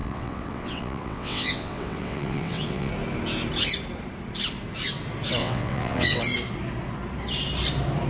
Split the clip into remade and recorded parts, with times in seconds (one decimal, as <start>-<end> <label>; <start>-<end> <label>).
0.0-2.9 remade; 2.9-5.4 recorded; 5.4-6.2 remade; 6.2-8.1 recorded